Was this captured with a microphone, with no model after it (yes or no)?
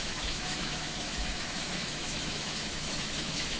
no